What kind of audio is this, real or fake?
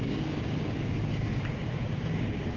fake